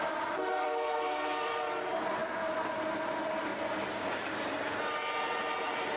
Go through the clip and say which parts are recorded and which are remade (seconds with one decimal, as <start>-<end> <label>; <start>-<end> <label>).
0.0-2.2 remade; 2.2-3.1 recorded; 3.1-3.5 remade; 3.5-5.6 recorded; 5.6-6.0 remade